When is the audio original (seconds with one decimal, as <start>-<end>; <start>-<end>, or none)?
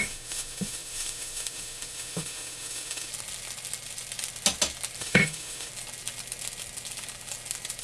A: 3.1-5.0; 5.7-7.8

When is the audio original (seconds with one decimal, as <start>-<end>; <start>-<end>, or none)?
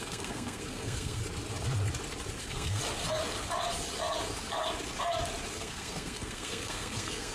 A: 1.2-2.4; 2.8-5.5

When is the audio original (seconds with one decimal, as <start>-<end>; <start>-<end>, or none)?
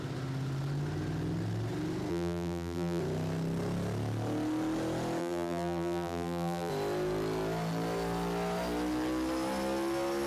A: 0.0-2.1; 3.0-5.2; 6.7-10.3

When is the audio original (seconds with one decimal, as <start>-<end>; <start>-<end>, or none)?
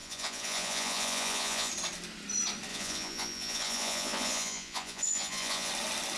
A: 1.7-2.7; 5.7-6.2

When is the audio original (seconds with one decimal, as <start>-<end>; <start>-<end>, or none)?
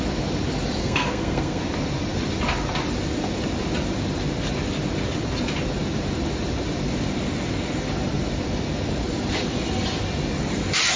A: 0.0-0.8; 1.6-11.0